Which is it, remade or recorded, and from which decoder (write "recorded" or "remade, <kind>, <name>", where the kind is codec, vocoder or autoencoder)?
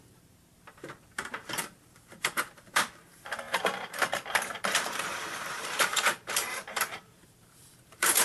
remade, vocoder, BigVGAN v2